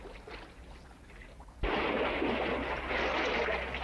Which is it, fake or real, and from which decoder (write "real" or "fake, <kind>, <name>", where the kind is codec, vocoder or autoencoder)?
real